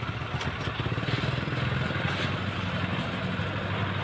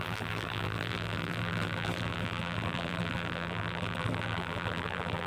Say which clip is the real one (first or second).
first